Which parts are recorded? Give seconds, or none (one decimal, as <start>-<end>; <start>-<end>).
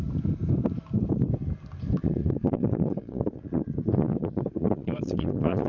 0.0-2.0